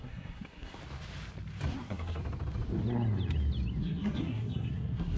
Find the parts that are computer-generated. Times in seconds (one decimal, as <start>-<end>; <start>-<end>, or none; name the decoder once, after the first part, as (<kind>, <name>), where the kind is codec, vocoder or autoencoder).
0.0-0.8 (codec, SNAC); 1.8-2.2; 3.8-5.2

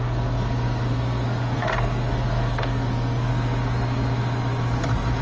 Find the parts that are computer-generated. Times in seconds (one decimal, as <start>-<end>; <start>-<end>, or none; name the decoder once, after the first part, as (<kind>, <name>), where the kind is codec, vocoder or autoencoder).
0.0-3.3 (codec, SNAC)

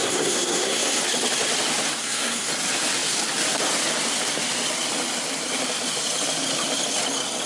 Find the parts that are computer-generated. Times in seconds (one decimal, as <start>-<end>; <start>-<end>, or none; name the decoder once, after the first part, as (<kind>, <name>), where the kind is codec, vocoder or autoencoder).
0.0-1.0 (codec, SNAC); 2.0-2.5

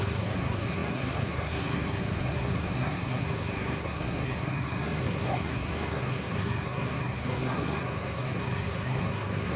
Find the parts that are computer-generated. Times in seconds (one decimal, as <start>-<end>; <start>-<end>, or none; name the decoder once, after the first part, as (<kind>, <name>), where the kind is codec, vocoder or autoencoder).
0.0-9.6 (codec, SNAC)

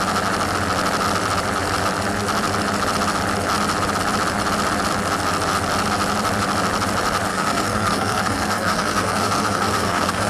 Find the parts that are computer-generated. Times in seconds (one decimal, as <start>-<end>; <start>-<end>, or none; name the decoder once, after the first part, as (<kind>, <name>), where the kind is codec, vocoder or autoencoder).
7.3-10.3 (codec, SNAC)

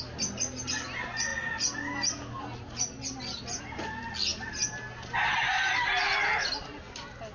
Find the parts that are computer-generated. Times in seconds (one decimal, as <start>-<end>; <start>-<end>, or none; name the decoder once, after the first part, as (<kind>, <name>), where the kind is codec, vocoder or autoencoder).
none